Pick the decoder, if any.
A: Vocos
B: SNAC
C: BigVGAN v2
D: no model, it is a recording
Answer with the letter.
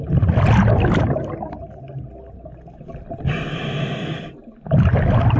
D